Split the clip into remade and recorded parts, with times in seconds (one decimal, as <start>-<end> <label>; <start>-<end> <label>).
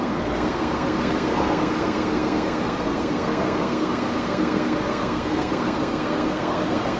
0.0-7.0 remade